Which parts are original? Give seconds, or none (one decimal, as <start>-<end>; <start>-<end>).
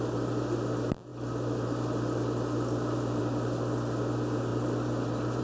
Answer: 0.0-5.4